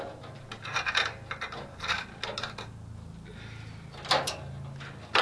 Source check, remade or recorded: recorded